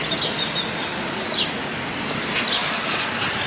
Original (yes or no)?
yes